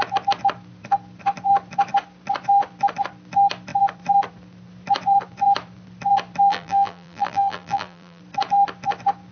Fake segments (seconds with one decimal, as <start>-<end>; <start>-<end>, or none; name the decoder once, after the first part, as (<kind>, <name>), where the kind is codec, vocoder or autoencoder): 6.5-8.2 (vocoder, BigVGAN v2)